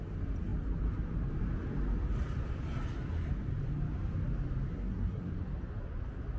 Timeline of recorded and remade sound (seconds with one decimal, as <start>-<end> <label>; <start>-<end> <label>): 0.0-4.7 recorded; 4.7-5.3 remade; 5.3-6.4 recorded